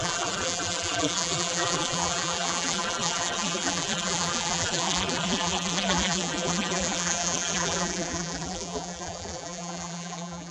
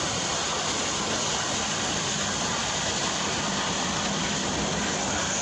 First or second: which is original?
second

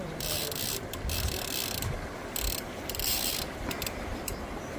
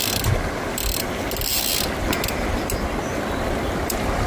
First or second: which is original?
second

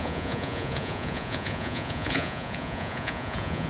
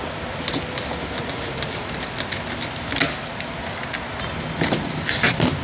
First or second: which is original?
second